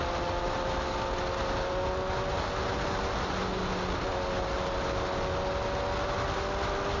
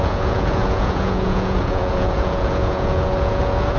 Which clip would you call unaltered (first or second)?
first